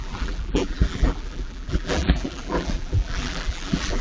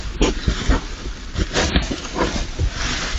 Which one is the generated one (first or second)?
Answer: first